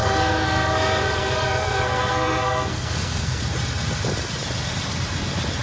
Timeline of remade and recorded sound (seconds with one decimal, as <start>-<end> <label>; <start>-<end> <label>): 0.0-3.4 remade; 3.4-5.6 recorded